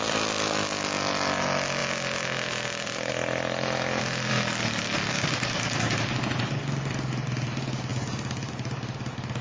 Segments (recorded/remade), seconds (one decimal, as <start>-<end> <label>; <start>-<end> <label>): 0.0-4.3 recorded; 4.3-5.9 remade; 5.9-9.4 recorded